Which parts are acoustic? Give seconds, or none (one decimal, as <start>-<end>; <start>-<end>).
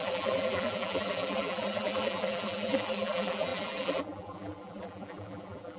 none